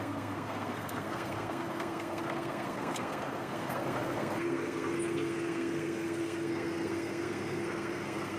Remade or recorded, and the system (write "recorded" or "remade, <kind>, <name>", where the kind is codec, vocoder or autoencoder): remade, codec, SNAC